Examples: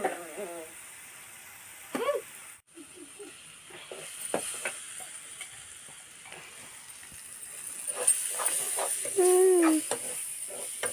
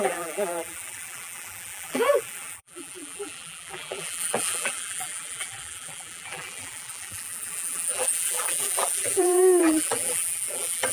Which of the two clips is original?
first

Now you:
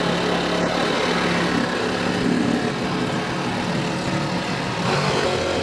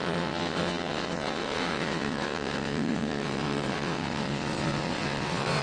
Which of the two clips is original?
first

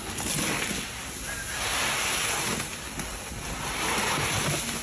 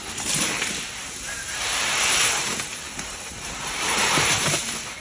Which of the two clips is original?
first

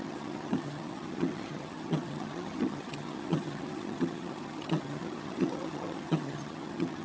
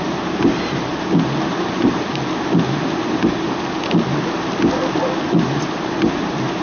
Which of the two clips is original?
second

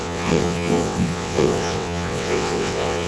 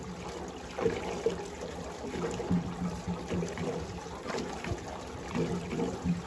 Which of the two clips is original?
second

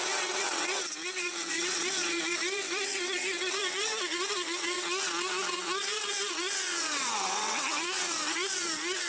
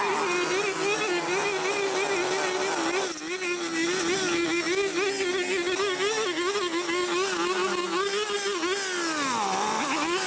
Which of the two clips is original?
second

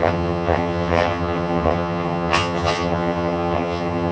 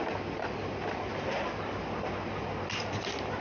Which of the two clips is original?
second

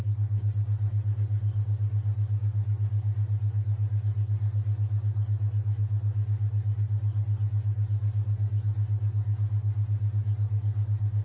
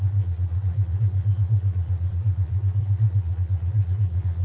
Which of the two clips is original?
first